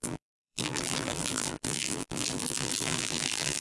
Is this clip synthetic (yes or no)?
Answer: yes